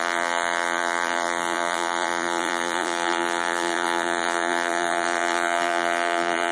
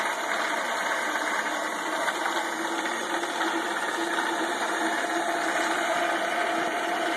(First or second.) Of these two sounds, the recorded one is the second